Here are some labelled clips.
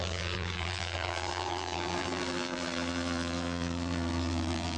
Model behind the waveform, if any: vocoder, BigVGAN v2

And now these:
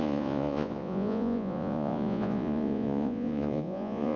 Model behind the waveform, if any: vocoder, Vocos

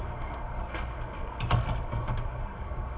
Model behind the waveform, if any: codec, SNAC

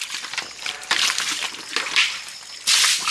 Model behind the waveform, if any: none